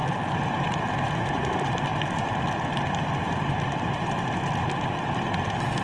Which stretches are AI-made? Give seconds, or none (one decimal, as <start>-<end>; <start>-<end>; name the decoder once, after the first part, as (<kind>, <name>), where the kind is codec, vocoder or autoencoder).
none